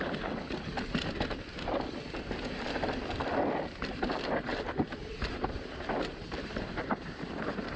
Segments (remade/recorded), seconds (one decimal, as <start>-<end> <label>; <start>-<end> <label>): 0.0-4.5 recorded; 4.5-6.7 remade; 6.7-7.8 recorded